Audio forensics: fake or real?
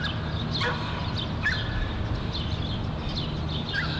real